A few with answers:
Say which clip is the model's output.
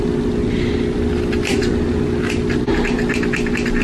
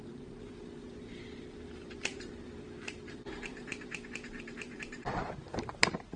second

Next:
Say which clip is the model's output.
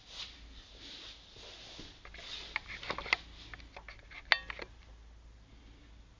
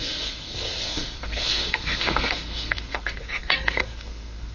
second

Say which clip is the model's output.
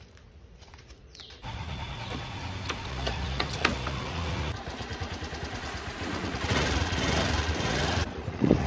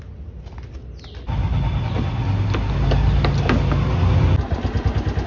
first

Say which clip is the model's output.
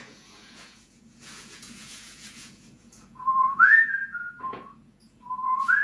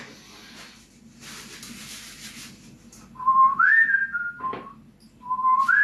first